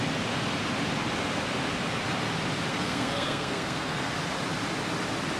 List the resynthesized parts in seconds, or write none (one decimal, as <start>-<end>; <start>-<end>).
2.7-4.1